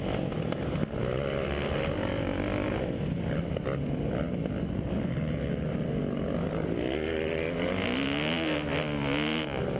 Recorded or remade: recorded